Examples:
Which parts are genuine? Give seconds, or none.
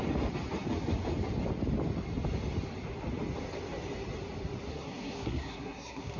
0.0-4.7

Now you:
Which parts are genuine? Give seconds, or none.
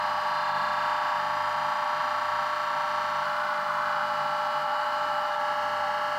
0.0-4.6; 5.4-6.2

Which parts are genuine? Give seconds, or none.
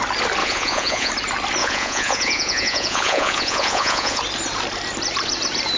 0.0-0.4; 1.1-1.6; 4.2-5.8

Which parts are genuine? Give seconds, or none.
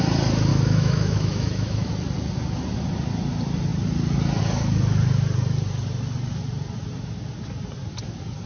0.0-0.5; 1.9-8.5